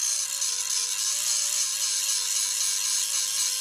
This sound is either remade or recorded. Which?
recorded